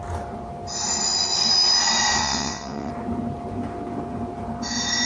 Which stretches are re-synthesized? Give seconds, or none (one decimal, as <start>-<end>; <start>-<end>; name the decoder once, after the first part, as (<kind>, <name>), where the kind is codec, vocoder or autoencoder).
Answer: 2.2-2.9 (vocoder, WaveNeXt)